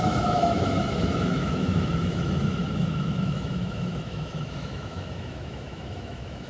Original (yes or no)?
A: no